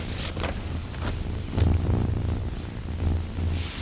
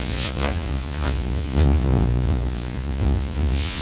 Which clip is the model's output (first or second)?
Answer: second